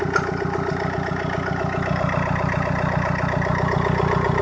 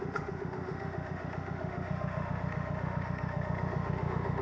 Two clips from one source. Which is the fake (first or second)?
second